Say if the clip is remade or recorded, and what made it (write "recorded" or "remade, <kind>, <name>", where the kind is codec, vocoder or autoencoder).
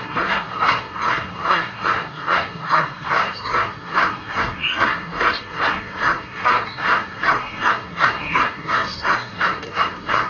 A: remade, codec, SNAC